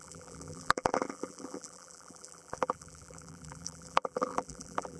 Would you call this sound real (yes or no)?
no